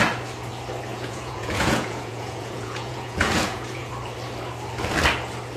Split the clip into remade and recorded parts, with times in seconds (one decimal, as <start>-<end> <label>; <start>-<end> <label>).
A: 0.0-0.9 recorded; 0.9-3.9 remade; 3.9-5.6 recorded